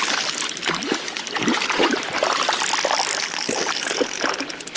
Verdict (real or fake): real